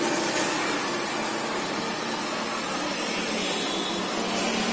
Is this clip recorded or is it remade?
recorded